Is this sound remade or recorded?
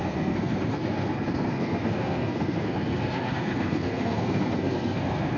remade